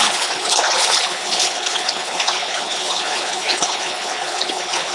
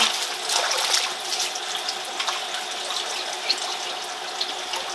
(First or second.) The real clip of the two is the second